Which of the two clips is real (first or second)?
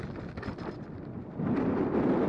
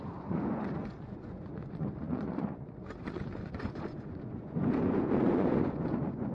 first